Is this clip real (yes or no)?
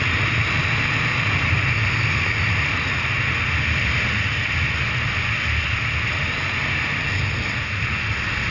yes